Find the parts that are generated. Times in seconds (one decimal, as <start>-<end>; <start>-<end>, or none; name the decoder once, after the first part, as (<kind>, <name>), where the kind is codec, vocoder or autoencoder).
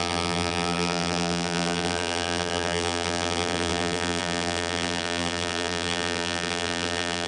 0.0-7.3 (vocoder, BigVGAN v2)